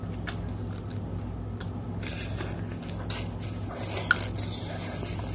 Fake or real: real